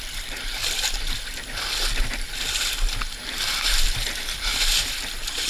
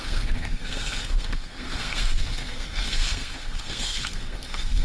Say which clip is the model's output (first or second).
second